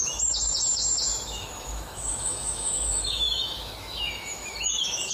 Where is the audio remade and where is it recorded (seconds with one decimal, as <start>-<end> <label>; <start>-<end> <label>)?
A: 0.0-5.1 remade